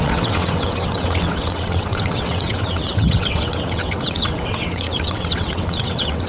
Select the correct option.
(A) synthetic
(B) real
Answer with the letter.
A